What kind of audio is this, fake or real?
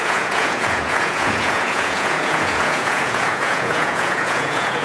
fake